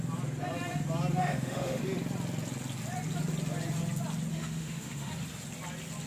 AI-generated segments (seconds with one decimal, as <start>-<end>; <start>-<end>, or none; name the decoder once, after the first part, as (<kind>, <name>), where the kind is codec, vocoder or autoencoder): 1.2-1.8 (autoencoder, DAC-VAE); 4.3-5.1